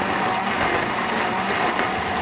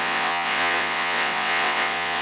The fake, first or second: second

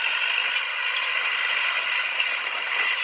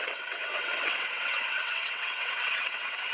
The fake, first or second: second